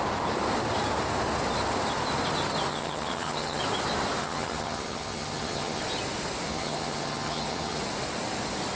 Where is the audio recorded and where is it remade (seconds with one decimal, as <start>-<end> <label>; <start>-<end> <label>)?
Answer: 0.0-2.7 recorded; 2.7-3.6 remade; 3.6-4.2 recorded; 4.2-5.8 remade; 5.8-6.5 recorded; 6.5-7.8 remade; 7.8-8.8 recorded